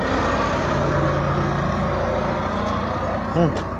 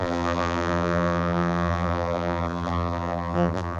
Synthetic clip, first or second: second